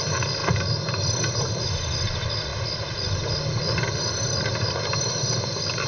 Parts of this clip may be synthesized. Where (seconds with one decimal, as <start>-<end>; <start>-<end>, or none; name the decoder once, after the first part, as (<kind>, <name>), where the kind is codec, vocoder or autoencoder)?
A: none